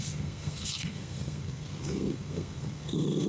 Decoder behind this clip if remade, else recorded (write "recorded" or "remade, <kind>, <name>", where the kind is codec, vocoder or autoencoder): remade, codec, SNAC